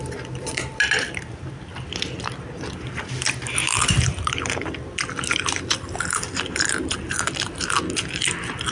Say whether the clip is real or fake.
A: real